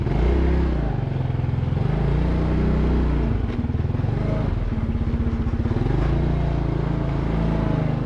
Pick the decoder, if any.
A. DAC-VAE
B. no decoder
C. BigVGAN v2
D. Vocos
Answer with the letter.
B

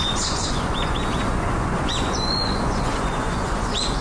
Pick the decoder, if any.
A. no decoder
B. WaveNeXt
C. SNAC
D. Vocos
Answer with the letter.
D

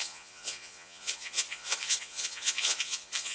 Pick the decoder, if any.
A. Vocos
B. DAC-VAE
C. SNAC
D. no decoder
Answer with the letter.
A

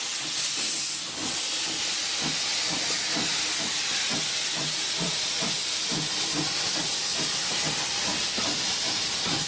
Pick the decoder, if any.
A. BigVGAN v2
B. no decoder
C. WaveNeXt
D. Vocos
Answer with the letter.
B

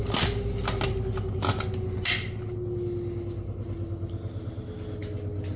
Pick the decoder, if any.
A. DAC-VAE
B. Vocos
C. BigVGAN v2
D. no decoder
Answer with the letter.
D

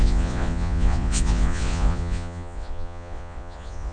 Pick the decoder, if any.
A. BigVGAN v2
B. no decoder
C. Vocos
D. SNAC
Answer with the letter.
C